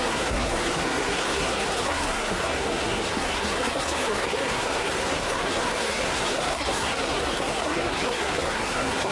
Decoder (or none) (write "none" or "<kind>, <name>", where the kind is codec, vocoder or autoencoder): codec, SNAC